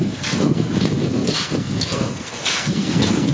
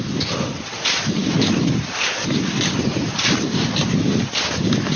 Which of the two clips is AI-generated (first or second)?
first